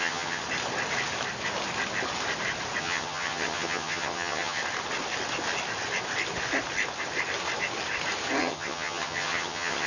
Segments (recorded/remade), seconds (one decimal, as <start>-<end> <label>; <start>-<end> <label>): 0.0-0.4 remade; 0.4-2.8 recorded; 2.8-4.6 remade; 4.6-8.4 recorded; 8.4-9.9 remade